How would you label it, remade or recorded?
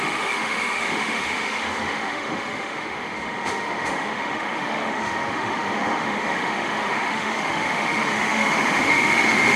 remade